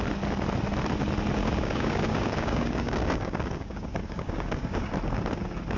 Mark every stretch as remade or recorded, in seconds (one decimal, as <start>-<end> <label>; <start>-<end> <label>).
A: 0.0-1.4 recorded; 1.4-4.9 remade; 4.9-5.8 recorded